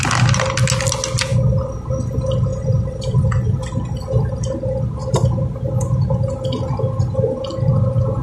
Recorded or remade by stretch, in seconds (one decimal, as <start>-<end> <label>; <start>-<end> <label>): 0.0-1.3 recorded; 1.3-1.9 remade; 1.9-2.5 recorded; 2.5-3.6 remade; 3.6-8.2 recorded